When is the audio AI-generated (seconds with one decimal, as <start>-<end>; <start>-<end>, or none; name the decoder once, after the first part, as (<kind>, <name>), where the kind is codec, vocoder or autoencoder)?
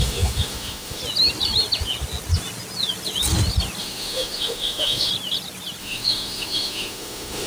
0.0-1.0 (autoencoder, DAC-VAE); 3.8-5.1; 5.8-7.5